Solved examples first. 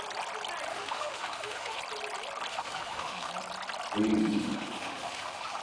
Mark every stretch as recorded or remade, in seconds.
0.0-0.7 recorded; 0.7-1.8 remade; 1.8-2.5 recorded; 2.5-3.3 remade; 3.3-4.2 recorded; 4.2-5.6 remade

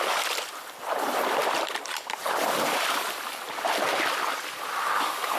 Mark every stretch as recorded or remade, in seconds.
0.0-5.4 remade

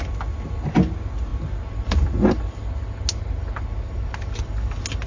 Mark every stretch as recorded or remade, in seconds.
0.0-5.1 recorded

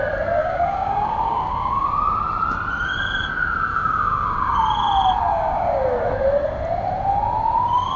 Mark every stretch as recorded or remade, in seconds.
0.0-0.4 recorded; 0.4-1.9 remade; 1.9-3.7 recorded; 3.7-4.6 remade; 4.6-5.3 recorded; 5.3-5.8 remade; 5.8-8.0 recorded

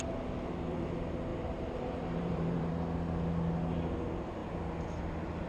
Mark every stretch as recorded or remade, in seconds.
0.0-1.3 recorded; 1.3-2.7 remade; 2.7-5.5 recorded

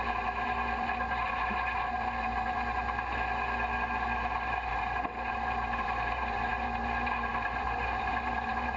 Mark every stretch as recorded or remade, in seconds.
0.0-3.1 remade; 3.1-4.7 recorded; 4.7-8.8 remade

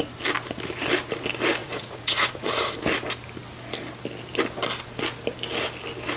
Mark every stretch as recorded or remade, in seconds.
0.0-1.6 recorded; 1.6-2.5 remade; 2.5-6.2 recorded